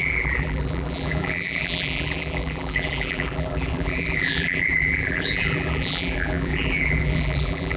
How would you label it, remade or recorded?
remade